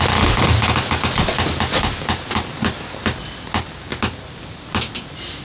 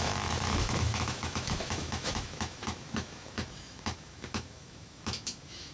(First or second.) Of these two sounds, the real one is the first